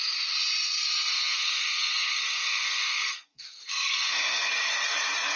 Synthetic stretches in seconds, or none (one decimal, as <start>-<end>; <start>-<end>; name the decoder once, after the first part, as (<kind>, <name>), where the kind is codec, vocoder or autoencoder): 1.3-4.5 (codec, SNAC)